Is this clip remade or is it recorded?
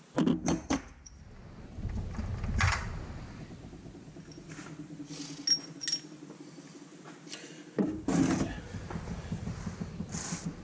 recorded